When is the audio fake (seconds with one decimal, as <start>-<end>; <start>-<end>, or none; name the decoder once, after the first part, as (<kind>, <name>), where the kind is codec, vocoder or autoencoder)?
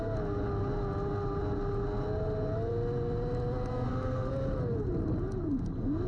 3.7-4.3 (codec, SNAC)